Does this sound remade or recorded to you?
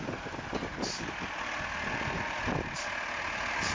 recorded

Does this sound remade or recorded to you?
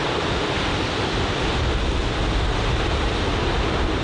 recorded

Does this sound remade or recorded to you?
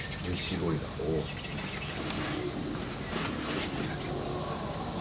recorded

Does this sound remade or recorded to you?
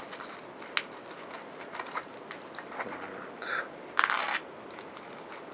recorded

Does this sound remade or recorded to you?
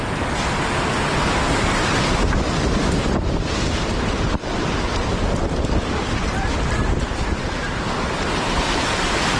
recorded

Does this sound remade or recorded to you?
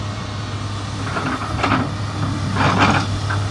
recorded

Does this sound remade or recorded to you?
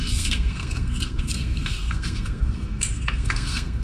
remade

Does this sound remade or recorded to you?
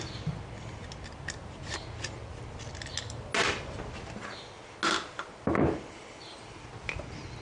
recorded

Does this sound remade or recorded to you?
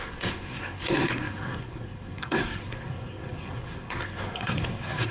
remade